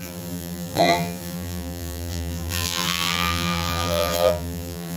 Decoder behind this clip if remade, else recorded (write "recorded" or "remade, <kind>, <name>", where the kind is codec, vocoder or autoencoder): remade, vocoder, BigVGAN v2